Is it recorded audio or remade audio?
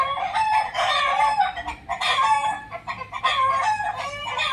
remade